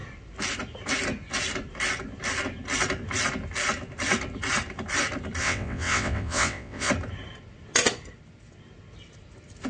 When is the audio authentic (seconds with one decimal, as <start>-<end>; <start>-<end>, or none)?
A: 0.0-5.4; 6.9-9.7